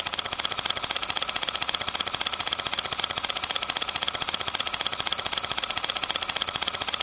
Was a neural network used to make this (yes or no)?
yes